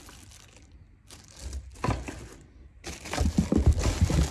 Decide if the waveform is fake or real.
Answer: real